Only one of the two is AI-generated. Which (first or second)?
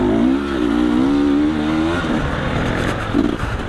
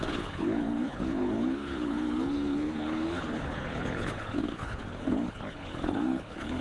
second